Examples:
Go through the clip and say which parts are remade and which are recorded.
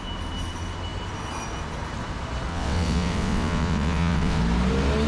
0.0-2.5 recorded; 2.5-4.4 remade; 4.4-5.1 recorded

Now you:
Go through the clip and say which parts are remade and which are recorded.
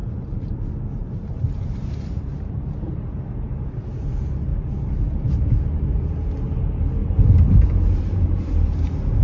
0.0-0.6 remade; 0.6-1.0 recorded; 1.0-3.2 remade; 3.2-4.5 recorded; 4.5-6.0 remade; 6.0-7.0 recorded; 7.0-9.2 remade